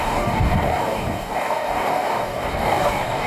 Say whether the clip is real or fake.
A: fake